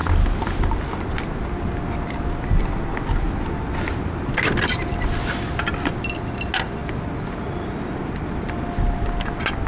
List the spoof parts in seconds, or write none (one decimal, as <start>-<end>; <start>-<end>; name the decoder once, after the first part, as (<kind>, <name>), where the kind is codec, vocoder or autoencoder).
none